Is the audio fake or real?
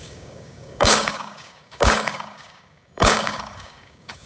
fake